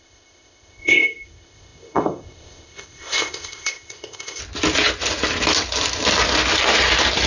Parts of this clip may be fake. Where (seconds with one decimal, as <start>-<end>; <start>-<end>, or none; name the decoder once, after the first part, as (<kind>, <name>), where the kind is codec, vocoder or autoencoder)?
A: 0.0-4.4 (codec, ZipCodec)